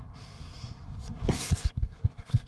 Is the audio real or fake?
fake